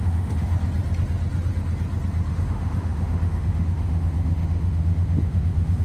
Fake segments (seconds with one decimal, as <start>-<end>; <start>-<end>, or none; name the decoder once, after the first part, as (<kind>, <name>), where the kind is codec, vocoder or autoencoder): 0.0-0.5 (autoencoder, DAC-VAE); 2.3-5.8